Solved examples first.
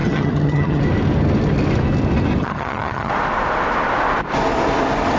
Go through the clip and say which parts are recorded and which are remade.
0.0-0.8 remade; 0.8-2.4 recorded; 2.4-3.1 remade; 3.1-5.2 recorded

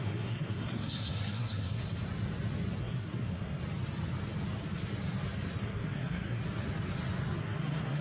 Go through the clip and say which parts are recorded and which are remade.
0.0-1.8 remade; 1.8-2.8 recorded; 2.8-3.6 remade; 3.6-5.6 recorded; 5.6-6.4 remade; 6.4-7.4 recorded; 7.4-8.0 remade

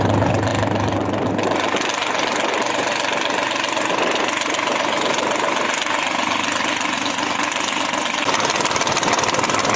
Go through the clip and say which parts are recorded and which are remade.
0.0-9.8 recorded